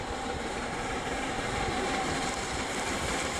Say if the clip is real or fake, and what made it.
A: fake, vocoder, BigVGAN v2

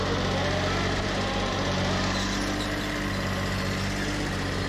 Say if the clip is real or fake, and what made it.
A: real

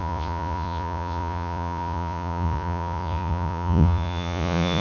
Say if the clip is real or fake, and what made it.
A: fake, vocoder, Vocos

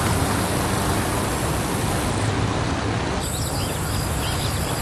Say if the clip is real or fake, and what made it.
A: real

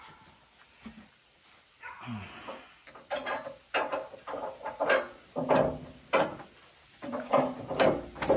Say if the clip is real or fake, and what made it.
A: real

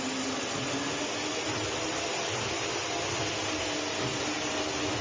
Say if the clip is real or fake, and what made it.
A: real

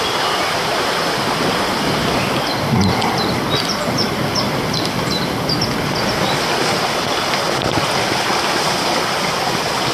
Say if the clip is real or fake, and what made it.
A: real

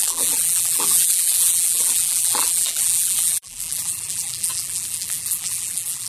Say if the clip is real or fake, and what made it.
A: fake, vocoder, BigVGAN v2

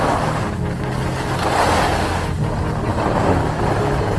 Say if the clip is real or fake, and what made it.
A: real